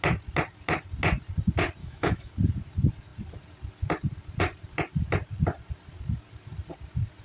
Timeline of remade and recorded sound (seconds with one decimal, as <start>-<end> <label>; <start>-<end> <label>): 0.0-1.8 recorded; 1.8-2.3 remade; 2.3-7.2 recorded